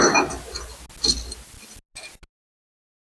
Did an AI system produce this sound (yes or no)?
no